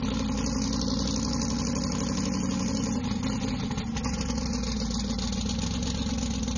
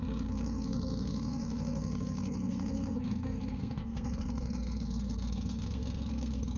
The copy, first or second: second